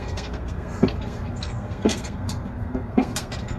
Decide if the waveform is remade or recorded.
remade